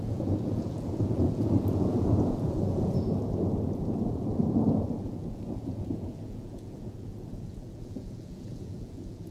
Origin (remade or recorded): remade